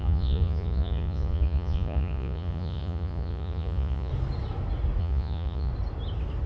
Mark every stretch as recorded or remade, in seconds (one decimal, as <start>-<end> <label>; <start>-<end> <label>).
0.0-4.1 remade; 4.1-5.0 recorded; 5.0-5.7 remade; 5.7-6.5 recorded